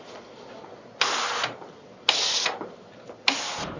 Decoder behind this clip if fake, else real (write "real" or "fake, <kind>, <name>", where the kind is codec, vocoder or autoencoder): real